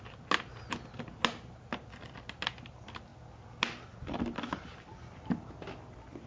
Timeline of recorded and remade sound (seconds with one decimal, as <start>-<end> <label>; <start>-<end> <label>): 0.0-6.3 recorded